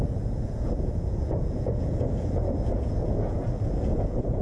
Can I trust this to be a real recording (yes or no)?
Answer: no